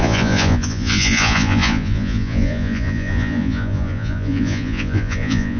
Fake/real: fake